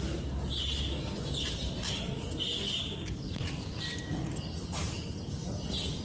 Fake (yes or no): no